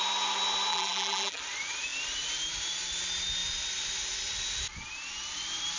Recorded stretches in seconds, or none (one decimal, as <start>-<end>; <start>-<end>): 0.0-0.7; 1.4-5.8

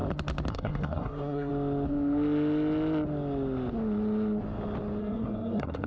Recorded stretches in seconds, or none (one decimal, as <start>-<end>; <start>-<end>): 0.0-0.5; 1.5-5.0